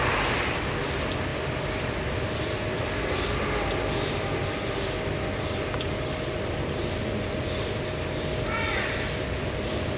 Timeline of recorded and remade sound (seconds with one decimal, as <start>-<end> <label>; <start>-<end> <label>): 0.0-10.0 recorded